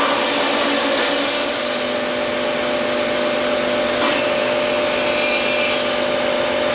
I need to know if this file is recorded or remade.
recorded